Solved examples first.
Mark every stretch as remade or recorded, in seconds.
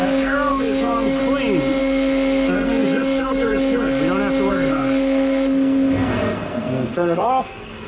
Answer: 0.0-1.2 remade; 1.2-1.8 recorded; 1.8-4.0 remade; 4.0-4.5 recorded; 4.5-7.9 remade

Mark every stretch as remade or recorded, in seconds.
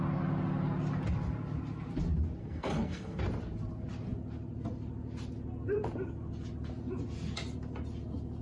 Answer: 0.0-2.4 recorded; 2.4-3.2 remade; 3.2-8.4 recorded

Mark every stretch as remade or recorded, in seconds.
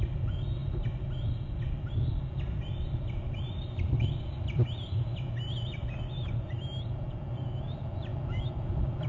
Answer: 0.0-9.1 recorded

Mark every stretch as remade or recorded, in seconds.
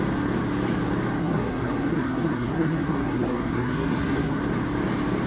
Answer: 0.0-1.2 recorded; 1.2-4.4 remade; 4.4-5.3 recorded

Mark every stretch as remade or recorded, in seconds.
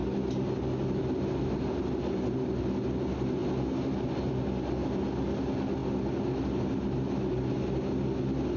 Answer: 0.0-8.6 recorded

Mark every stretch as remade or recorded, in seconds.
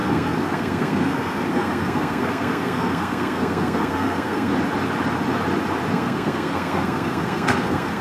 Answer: 0.0-4.5 remade; 4.5-5.9 recorded; 5.9-8.0 remade